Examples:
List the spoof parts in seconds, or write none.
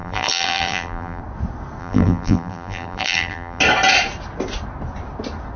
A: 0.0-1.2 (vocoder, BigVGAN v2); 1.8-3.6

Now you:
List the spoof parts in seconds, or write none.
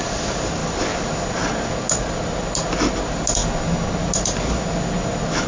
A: none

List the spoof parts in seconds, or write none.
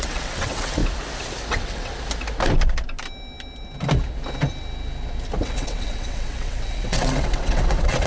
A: 0.0-0.8 (vocoder, WaveNeXt); 1.5-1.9; 5.4-8.1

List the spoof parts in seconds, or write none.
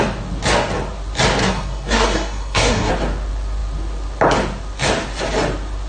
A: 1.4-2.9 (codec, SNAC)